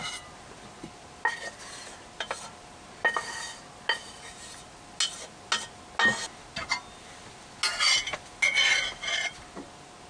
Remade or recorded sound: recorded